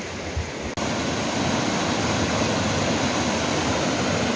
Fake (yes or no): no